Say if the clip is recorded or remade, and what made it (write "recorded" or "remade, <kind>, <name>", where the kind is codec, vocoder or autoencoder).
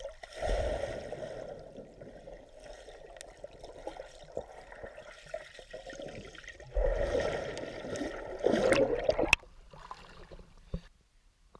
recorded